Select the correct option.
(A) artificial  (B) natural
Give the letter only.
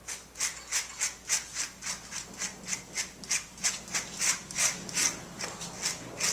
B